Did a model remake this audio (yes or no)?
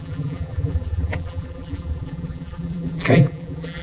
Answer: yes